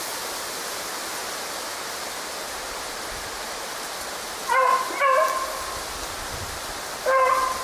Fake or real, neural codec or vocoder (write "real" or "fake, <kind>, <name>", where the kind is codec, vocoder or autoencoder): real